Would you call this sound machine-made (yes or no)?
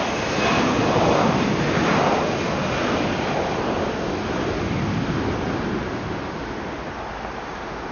no